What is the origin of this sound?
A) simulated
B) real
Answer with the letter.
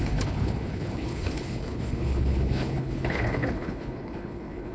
A